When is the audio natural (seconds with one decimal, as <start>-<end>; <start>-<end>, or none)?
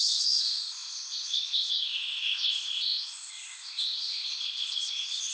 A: none